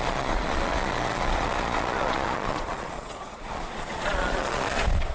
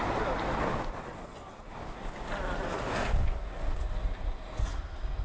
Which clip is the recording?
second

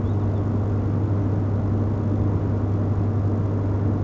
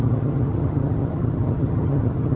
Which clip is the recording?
first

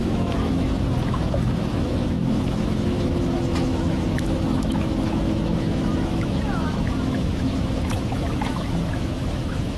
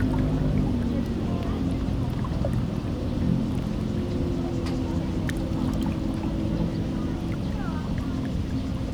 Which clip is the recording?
second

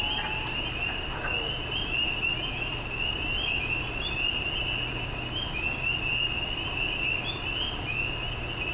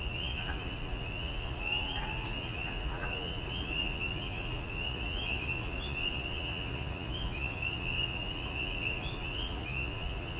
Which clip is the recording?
first